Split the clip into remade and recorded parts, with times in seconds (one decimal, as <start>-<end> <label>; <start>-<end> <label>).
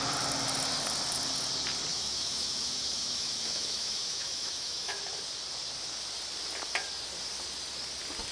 0.0-1.9 recorded; 1.9-5.0 remade; 5.0-8.3 recorded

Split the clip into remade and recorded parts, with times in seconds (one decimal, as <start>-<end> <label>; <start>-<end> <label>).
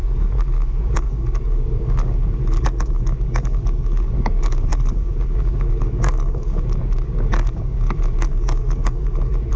0.0-9.6 remade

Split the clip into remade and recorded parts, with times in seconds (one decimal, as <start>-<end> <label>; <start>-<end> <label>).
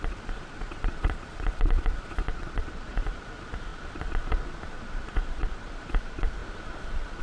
0.0-7.2 remade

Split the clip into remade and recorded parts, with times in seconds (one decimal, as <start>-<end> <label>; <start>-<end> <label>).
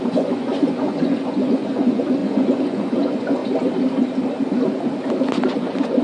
0.0-3.4 remade; 3.4-5.5 recorded; 5.5-6.0 remade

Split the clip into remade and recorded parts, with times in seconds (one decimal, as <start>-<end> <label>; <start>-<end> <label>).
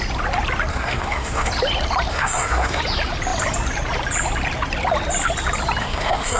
0.0-0.7 recorded; 0.7-1.5 remade; 1.5-2.1 recorded; 2.1-2.8 remade; 2.8-5.8 recorded; 5.8-6.4 remade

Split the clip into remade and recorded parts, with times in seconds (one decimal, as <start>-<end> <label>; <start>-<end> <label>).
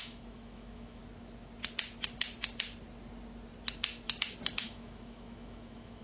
0.0-1.0 remade; 1.0-4.6 recorded; 4.6-6.0 remade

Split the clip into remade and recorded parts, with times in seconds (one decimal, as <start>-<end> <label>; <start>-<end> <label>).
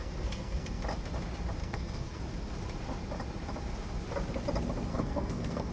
0.0-0.8 remade; 0.8-1.6 recorded; 1.6-2.2 remade; 2.2-4.9 recorded; 4.9-5.7 remade